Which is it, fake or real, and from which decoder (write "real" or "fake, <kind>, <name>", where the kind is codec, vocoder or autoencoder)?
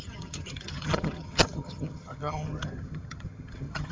fake, vocoder, HiFi-GAN